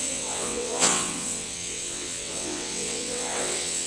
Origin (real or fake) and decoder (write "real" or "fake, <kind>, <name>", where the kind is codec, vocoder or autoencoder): fake, vocoder, WaveNeXt